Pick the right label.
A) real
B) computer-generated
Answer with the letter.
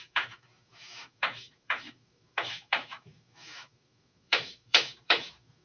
B